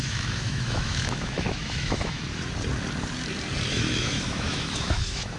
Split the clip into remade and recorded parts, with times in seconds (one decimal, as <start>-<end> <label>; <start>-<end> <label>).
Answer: 0.0-2.2 remade; 2.2-3.7 recorded; 3.7-5.4 remade